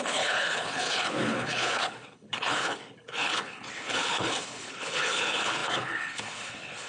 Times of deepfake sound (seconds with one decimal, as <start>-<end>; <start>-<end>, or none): 0.0-6.9